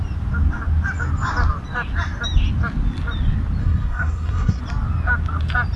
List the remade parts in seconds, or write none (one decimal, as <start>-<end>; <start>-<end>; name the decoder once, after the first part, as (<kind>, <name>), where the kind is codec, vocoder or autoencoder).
3.6-4.6 (codec, SNAC)